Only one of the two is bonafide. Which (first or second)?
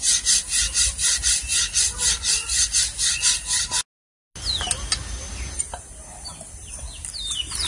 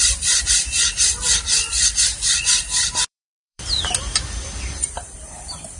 first